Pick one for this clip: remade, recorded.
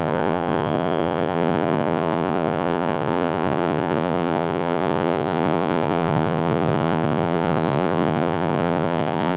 remade